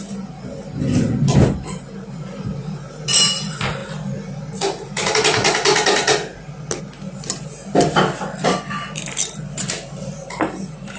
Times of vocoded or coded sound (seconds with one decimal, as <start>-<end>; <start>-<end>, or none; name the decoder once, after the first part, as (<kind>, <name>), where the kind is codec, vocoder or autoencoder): none